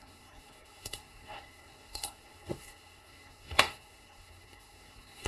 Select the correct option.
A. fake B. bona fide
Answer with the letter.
A